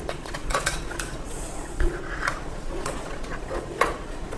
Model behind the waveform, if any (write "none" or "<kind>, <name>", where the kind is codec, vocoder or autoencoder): vocoder, Vocos